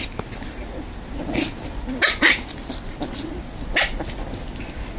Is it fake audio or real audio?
real